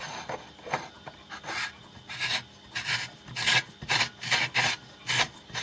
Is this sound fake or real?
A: real